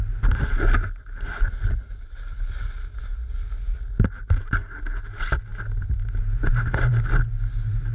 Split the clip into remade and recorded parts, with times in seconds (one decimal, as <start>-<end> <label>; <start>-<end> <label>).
0.0-7.9 recorded